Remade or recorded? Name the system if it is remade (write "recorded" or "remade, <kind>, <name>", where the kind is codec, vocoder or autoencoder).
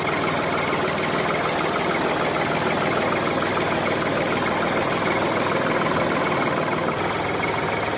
recorded